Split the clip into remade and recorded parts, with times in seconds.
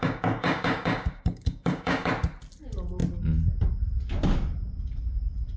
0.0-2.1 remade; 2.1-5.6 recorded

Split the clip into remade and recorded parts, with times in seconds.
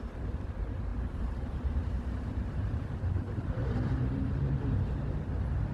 0.0-0.9 recorded; 0.9-4.3 remade; 4.3-5.7 recorded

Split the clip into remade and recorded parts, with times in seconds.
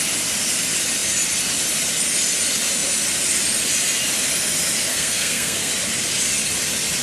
0.0-4.9 recorded; 4.9-5.7 remade; 5.7-7.0 recorded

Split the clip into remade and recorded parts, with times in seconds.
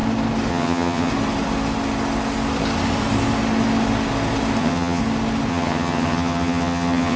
0.0-0.5 recorded; 0.5-1.1 remade; 1.1-4.6 recorded; 4.6-5.0 remade; 5.0-5.5 recorded; 5.5-7.2 remade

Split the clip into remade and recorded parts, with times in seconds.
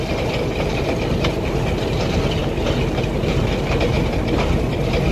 0.0-5.1 recorded